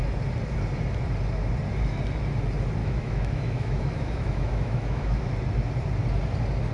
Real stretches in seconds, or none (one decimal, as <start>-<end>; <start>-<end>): 0.0-2.8; 5.3-6.7